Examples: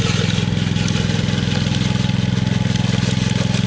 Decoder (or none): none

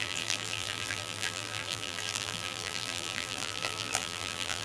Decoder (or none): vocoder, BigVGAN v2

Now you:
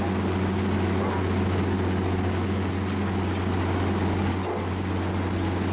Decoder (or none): none